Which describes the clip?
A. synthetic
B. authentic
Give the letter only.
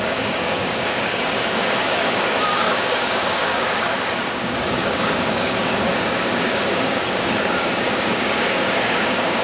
A